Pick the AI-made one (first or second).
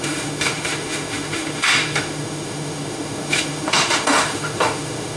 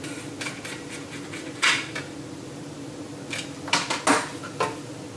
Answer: first